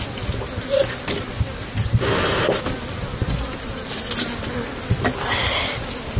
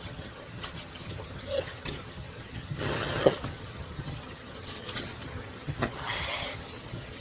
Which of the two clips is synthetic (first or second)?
second